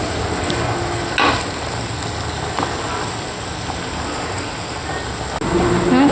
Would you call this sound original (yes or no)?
yes